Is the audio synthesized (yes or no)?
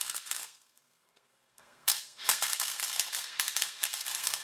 yes